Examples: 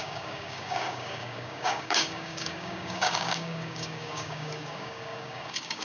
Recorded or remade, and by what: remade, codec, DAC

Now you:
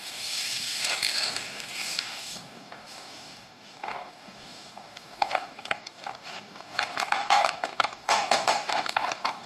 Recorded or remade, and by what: remade, codec, DAC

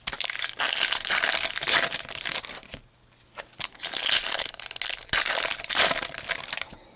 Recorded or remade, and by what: recorded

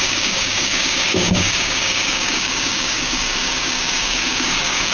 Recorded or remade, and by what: remade, codec, DAC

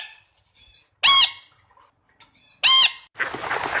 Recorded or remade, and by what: recorded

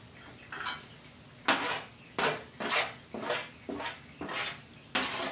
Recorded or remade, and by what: recorded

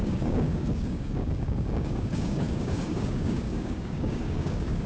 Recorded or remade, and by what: remade, codec, DAC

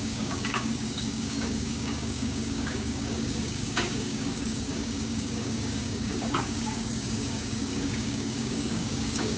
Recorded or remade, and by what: remade, codec, DAC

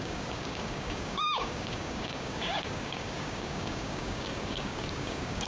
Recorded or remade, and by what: remade, codec, DAC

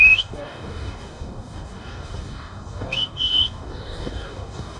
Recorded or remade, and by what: remade, codec, DAC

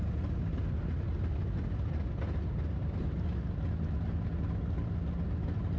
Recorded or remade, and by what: recorded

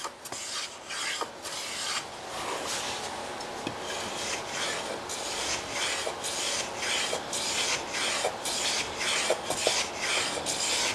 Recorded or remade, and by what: recorded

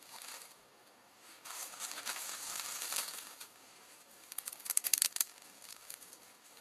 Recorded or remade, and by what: remade, codec, DAC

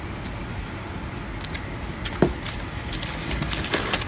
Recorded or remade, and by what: recorded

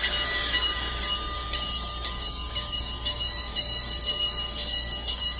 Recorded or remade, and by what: remade, codec, DAC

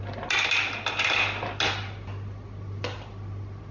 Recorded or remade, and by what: recorded